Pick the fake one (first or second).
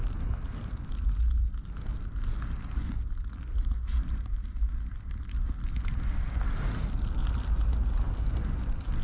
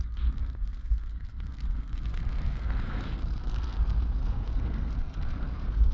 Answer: second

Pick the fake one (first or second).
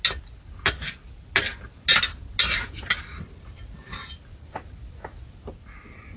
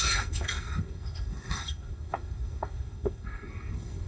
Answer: second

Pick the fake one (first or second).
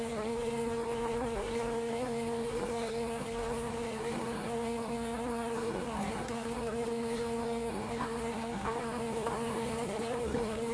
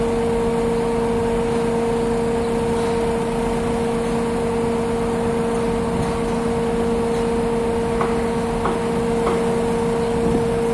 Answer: first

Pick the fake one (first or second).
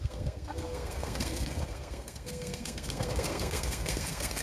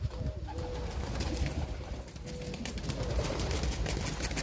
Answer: first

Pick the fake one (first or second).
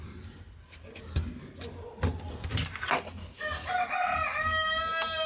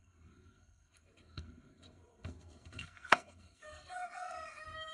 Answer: second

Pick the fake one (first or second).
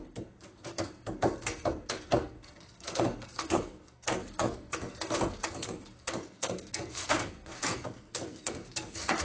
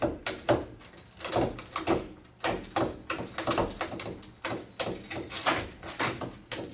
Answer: first